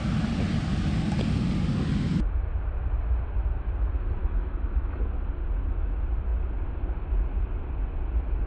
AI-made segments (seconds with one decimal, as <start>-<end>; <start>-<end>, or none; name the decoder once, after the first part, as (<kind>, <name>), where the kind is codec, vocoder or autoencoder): 4.2-5.0 (autoencoder, DAC-VAE)